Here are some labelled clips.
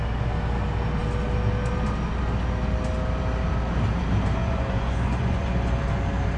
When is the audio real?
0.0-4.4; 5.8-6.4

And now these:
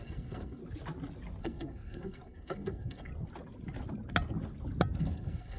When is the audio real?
0.6-1.4; 3.1-5.0

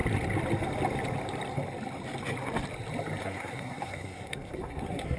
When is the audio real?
0.0-3.2

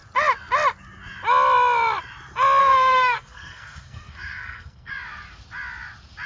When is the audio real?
0.0-2.6; 4.9-6.3

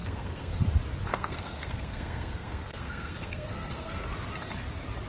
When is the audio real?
0.5-1.1; 4.0-5.1

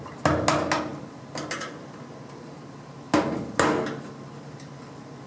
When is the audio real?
0.0-5.3

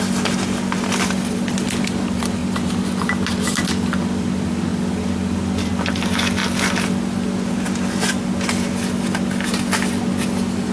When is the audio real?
0.0-10.7